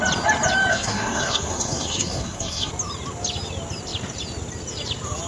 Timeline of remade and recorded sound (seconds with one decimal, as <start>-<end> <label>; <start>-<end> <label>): 0.0-0.7 recorded; 0.7-2.7 remade; 2.7-5.3 recorded